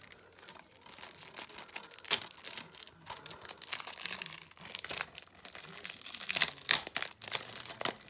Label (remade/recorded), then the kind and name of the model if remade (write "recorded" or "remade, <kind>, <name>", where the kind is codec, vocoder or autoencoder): recorded